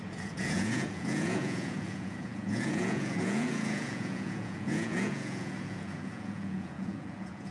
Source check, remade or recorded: remade